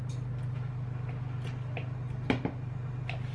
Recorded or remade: recorded